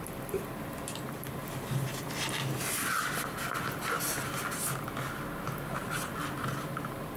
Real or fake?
real